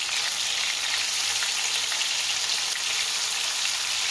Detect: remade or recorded recorded